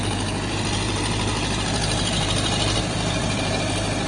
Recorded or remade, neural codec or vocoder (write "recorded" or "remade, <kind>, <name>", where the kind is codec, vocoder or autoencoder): remade, vocoder, BigVGAN v2